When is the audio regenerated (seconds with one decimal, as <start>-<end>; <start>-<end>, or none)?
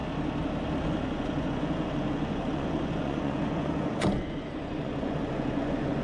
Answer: 0.9-6.0